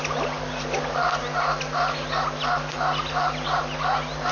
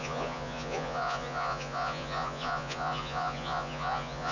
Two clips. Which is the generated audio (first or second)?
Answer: second